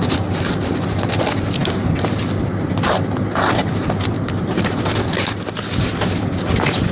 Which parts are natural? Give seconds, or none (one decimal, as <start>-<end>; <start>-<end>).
0.0-6.9